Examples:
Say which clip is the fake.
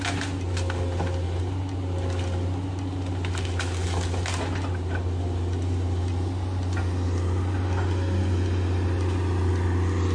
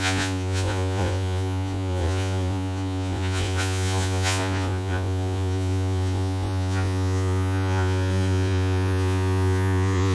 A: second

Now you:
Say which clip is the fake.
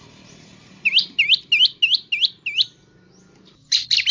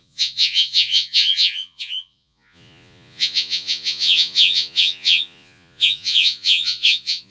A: second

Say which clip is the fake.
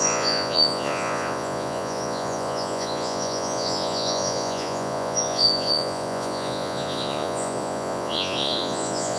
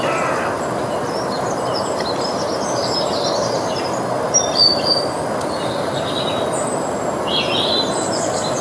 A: first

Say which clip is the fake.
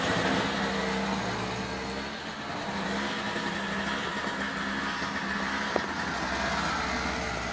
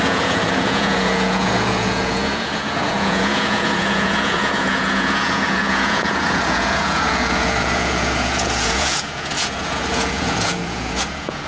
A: second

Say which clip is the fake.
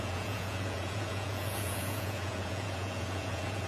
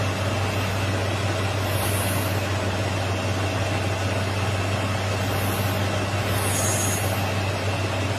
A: first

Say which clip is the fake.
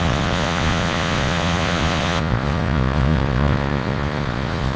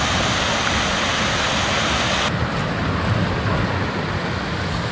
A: first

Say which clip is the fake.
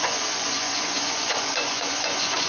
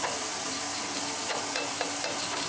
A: first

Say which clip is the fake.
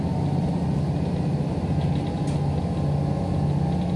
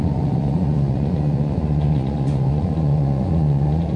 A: second